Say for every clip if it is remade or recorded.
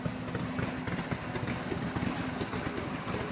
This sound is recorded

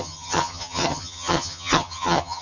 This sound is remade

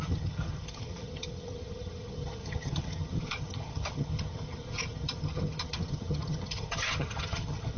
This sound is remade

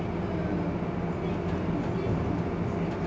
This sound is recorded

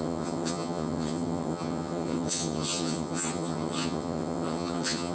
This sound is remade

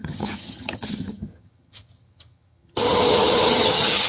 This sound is remade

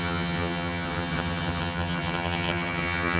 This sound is remade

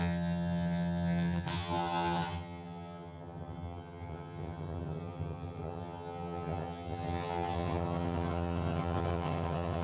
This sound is remade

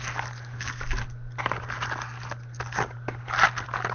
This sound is recorded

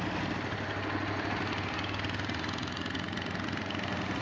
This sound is recorded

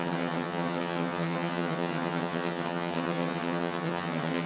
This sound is remade